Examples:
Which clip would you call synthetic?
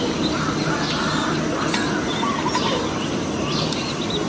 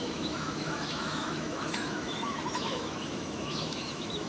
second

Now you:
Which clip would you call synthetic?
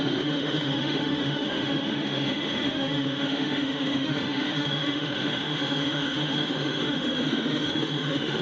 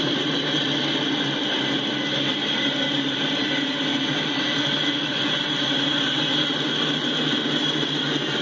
first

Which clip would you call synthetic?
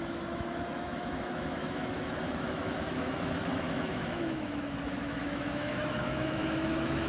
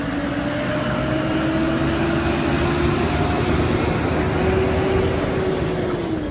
first